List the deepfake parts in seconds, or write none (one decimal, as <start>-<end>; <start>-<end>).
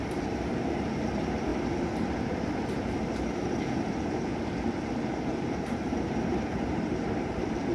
0.0-1.5; 2.6-4.3; 5.3-7.7